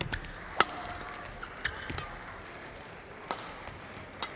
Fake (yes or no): no